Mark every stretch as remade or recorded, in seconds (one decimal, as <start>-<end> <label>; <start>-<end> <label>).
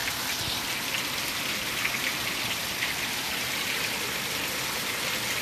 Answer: 0.0-0.7 remade; 0.7-2.1 recorded; 2.1-5.4 remade